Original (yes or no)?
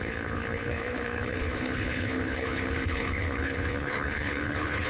no